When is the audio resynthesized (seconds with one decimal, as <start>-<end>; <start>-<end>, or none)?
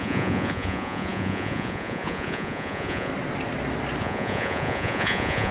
0.0-3.1; 4.0-5.5